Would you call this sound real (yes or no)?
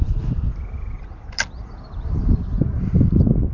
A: yes